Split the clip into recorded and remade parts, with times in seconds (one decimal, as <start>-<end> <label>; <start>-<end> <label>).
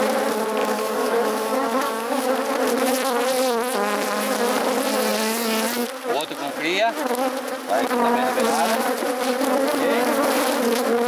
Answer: 0.0-0.6 recorded; 0.6-2.3 remade; 2.3-11.1 recorded